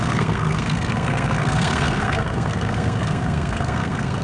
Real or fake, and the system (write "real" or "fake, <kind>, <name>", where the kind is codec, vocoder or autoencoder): fake, codec, SNAC